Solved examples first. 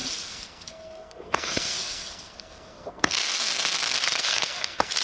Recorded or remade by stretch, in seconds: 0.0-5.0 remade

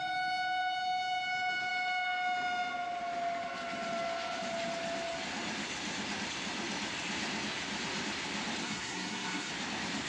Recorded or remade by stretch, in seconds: 0.0-8.6 recorded; 8.6-9.5 remade; 9.5-10.1 recorded